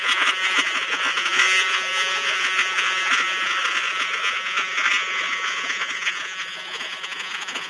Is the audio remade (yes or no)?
yes